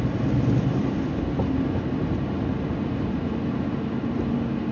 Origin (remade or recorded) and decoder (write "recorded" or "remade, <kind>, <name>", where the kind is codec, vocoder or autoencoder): recorded